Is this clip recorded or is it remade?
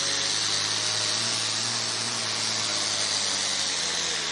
recorded